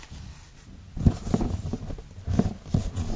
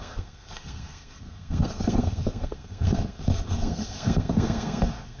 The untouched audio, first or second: first